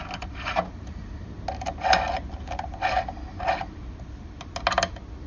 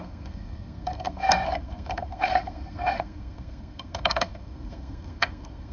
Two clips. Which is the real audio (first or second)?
first